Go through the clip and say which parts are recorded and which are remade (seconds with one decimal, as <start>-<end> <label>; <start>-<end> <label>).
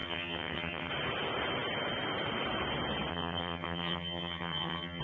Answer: 0.0-0.9 remade; 0.9-3.1 recorded; 3.1-5.0 remade